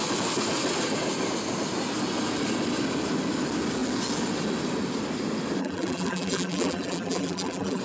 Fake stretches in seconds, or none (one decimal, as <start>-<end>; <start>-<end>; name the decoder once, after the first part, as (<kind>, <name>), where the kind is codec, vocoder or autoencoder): 5.6-7.8 (vocoder, BigVGAN v2)